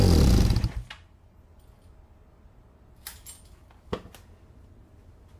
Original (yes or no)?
yes